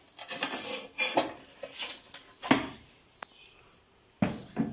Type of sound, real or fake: real